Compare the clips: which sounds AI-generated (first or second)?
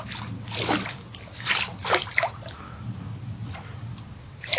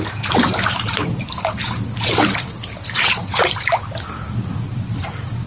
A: second